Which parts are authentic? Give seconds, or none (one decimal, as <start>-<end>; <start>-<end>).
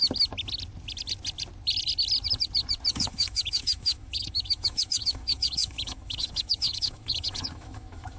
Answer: 0.0-2.9